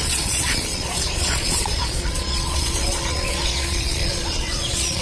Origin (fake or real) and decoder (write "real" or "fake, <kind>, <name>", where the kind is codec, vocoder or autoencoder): fake, vocoder, Vocos